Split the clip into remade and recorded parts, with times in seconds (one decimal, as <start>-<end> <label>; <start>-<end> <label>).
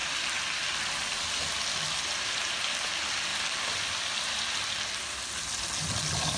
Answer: 0.0-6.4 recorded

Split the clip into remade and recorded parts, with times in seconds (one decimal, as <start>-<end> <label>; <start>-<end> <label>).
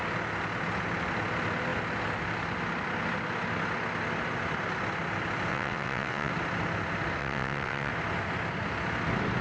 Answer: 0.0-5.5 recorded; 5.5-6.3 remade; 6.3-7.2 recorded; 7.2-7.9 remade; 7.9-9.4 recorded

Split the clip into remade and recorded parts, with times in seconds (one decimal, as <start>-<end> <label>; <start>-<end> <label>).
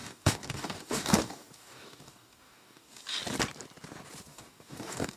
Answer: 0.0-3.0 remade; 3.0-4.3 recorded; 4.3-5.2 remade